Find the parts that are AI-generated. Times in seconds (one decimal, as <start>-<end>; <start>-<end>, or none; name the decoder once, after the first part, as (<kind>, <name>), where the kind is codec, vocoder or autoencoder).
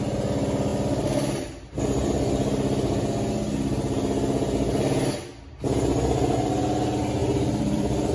0.7-1.8 (vocoder, BigVGAN v2); 7.2-8.1